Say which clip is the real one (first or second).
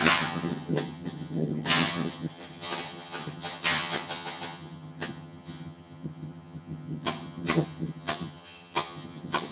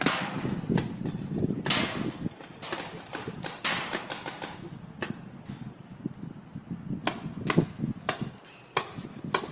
second